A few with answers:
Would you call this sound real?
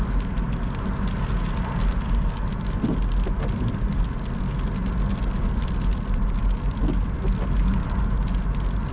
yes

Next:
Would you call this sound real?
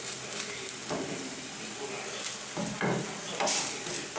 yes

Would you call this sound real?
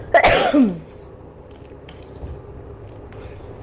yes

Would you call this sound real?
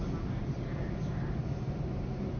yes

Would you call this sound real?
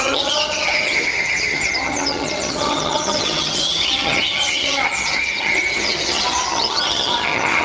no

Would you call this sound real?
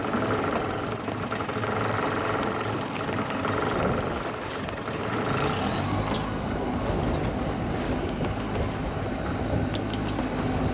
yes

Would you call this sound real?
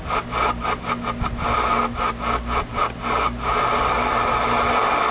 yes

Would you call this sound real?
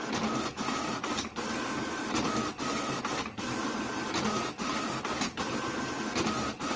yes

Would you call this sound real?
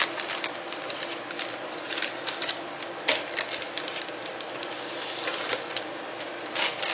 yes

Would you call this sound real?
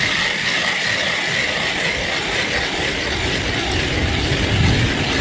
yes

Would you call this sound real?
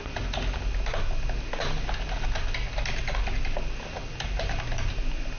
yes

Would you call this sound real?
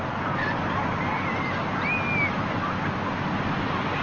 yes